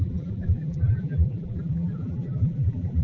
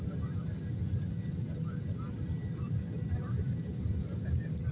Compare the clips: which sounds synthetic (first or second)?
first